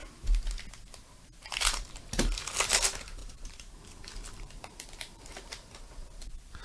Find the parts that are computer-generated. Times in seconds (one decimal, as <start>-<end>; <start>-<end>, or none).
3.2-6.6